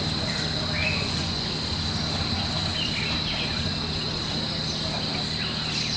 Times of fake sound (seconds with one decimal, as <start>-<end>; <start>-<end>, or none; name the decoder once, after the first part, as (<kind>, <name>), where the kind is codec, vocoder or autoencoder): 0.8-1.5 (vocoder, Vocos)